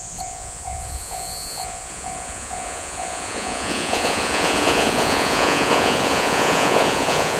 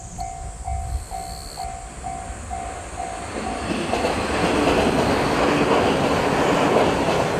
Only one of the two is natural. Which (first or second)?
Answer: second